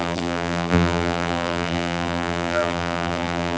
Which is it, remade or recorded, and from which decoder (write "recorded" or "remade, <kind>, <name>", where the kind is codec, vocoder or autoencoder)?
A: remade, vocoder, BigVGAN v2